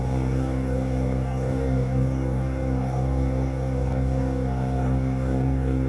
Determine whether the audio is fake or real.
fake